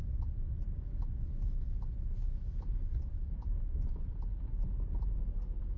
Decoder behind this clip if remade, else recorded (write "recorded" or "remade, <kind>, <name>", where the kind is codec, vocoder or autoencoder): remade, vocoder, BigVGAN v2